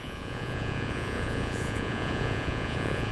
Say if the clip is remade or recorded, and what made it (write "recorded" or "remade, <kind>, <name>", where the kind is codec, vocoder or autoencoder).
remade, vocoder, Vocos